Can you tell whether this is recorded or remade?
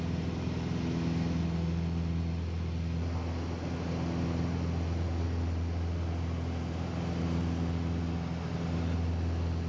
recorded